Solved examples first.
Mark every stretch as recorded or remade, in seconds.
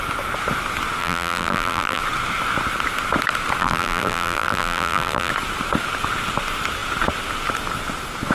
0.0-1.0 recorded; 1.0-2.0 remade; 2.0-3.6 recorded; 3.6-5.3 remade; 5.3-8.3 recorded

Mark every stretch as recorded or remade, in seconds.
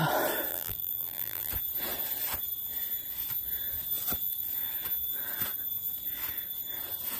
0.0-0.5 recorded; 0.5-1.5 remade; 1.5-7.2 recorded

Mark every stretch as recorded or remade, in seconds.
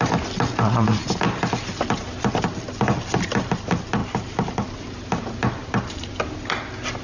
0.0-4.0 recorded; 4.0-4.7 remade; 4.7-5.6 recorded; 5.6-6.2 remade; 6.2-7.0 recorded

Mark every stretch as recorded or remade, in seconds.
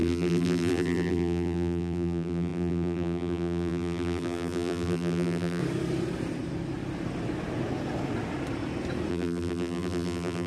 0.0-5.6 remade; 5.6-9.1 recorded; 9.1-10.5 remade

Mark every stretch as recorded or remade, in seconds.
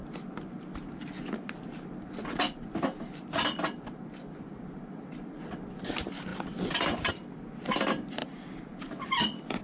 0.0-6.3 recorded; 6.3-7.1 remade; 7.1-8.2 recorded; 8.2-8.8 remade; 8.8-9.6 recorded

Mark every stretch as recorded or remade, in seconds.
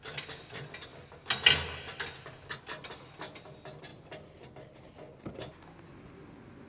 0.0-6.7 recorded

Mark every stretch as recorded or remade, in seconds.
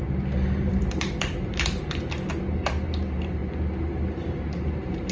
0.0-3.4 remade; 3.4-4.1 recorded; 4.1-5.1 remade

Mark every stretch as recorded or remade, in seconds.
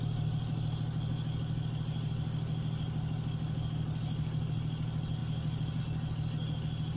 0.0-7.0 recorded